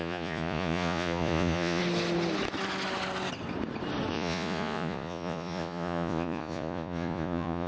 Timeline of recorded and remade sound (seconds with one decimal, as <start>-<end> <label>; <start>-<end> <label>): 0.0-1.8 remade; 1.8-4.1 recorded; 4.1-7.7 remade